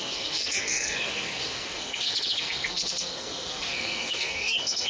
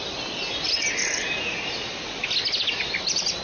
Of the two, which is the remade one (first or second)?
first